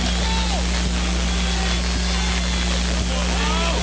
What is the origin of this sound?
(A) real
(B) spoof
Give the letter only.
A